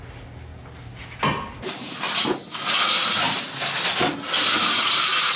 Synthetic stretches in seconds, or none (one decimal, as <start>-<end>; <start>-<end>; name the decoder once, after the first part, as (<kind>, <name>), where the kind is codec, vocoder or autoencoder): none